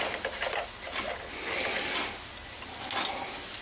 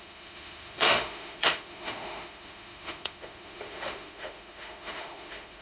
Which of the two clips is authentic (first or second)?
first